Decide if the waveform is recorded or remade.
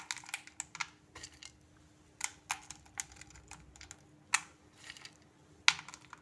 recorded